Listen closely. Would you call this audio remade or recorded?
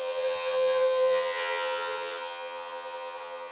remade